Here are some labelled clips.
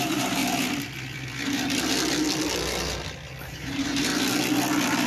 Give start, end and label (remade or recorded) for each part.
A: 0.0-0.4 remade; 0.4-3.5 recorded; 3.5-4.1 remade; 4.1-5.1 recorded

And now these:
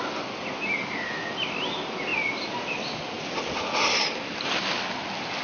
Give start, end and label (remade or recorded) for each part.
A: 0.0-5.4 recorded

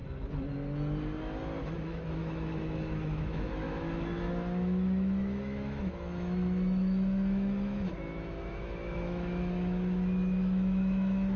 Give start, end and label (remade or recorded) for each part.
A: 0.0-1.6 recorded; 1.6-11.4 remade

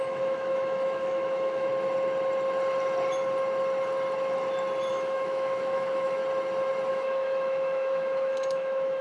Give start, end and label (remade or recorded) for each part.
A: 0.0-1.7 remade; 1.7-4.9 recorded; 4.9-6.2 remade; 6.2-6.9 recorded; 6.9-9.0 remade

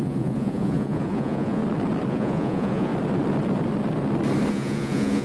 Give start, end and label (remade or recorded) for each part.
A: 0.0-1.6 remade; 1.6-2.1 recorded; 2.1-2.9 remade; 2.9-4.5 recorded; 4.5-5.2 remade

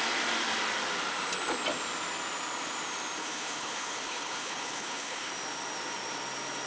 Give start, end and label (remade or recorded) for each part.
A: 0.0-3.2 recorded; 3.2-5.3 remade; 5.3-6.7 recorded